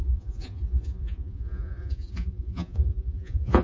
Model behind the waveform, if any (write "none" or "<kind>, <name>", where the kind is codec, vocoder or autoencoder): vocoder, Vocos